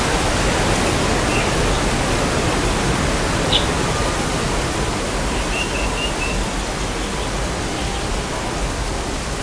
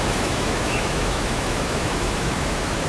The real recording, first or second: first